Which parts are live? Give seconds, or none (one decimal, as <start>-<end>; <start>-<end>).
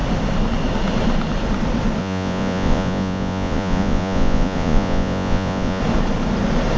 0.0-2.0; 5.8-6.8